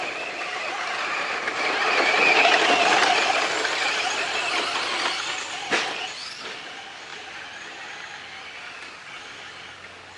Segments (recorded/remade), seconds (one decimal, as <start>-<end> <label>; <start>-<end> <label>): 0.0-7.1 recorded; 7.1-7.8 remade; 7.8-10.2 recorded